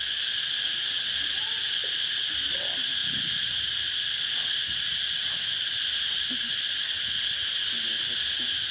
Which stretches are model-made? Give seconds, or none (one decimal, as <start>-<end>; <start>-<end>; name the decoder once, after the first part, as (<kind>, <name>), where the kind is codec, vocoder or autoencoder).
none